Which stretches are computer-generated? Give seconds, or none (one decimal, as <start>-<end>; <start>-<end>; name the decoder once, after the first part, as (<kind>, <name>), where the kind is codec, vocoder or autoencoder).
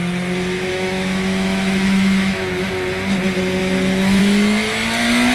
0.7-2.7 (autoencoder, DAC-VAE); 3.6-4.2